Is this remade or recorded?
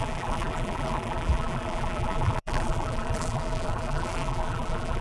remade